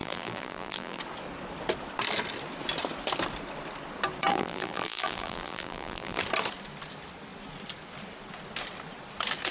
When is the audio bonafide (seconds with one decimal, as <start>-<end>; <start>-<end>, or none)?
1.0-4.3; 6.2-9.5